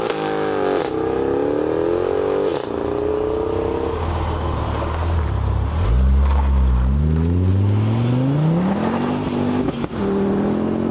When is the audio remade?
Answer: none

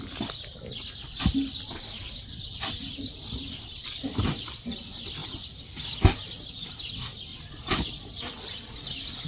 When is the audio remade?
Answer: none

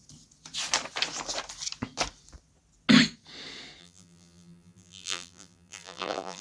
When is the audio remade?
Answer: 3.8-6.4 (vocoder, BigVGAN v2)

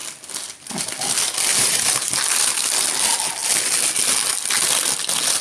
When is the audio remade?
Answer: 1.5-2.1 (vocoder, BigVGAN v2)

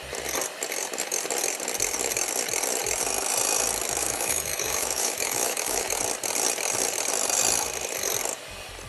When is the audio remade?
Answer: 4.0-6.0 (autoencoder, DAC-VAE)

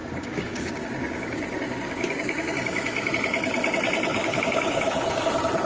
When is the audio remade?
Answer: 0.0-3.1 (codec, DAC); 4.1-5.3